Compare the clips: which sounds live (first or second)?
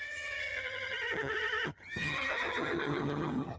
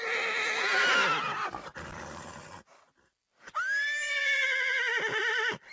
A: second